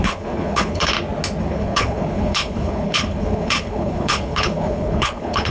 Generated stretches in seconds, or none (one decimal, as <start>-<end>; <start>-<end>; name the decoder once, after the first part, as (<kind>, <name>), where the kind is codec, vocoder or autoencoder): 0.0-0.9 (codec, HILCodec); 1.4-5.5